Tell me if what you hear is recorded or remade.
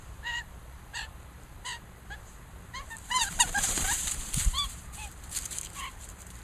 remade